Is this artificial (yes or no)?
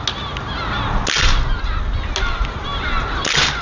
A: no